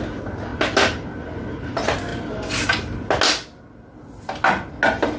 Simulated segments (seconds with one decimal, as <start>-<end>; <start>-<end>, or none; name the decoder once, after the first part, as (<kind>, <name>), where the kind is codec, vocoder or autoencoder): none